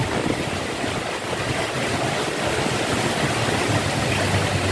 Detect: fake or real real